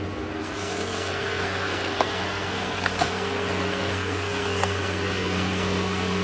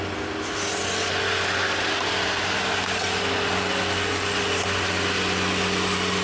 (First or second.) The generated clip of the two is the first